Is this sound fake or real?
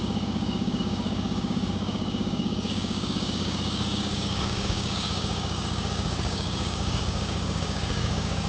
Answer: fake